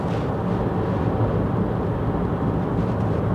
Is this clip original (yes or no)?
yes